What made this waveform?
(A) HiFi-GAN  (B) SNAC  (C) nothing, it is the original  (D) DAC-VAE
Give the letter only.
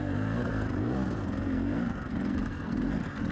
B